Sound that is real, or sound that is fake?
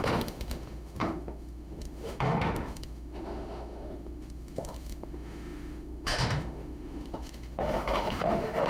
fake